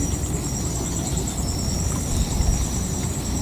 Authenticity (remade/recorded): recorded